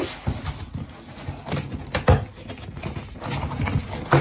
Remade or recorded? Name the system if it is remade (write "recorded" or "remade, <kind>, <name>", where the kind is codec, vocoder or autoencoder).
recorded